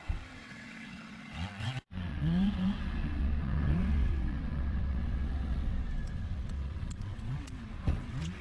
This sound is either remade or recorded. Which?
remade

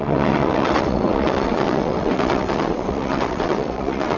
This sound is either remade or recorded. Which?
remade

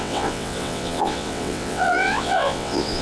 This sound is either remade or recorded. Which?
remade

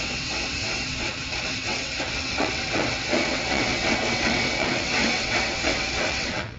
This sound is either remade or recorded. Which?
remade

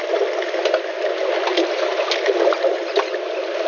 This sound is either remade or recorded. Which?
recorded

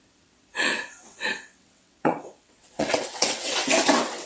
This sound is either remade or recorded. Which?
remade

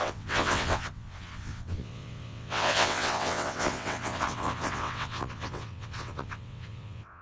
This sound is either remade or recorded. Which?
remade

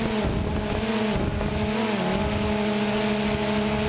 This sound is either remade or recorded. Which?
recorded